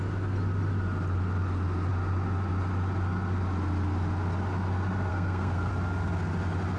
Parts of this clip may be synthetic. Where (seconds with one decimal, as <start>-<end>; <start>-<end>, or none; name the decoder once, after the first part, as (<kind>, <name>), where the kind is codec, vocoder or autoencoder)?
5.1-5.7 (codec, SNAC)